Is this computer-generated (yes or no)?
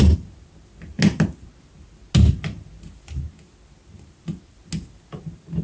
no